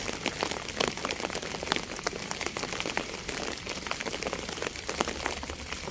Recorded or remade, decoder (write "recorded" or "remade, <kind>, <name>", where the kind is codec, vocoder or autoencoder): remade, vocoder, BigVGAN v2